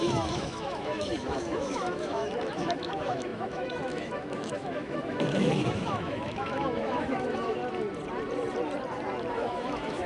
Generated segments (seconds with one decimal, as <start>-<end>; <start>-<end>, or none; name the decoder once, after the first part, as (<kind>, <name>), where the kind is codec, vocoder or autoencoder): 0.0-7.6 (autoencoder, DAC-VAE); 9.3-10.1